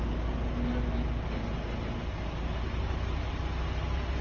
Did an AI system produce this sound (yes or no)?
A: no